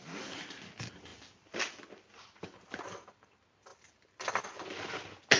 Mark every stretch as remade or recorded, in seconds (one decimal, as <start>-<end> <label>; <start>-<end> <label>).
0.0-5.4 recorded

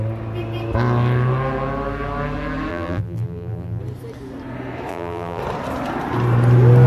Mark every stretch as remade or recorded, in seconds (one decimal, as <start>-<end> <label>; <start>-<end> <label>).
0.0-2.7 recorded; 2.7-3.8 remade; 3.8-4.9 recorded; 4.9-5.4 remade; 5.4-6.9 recorded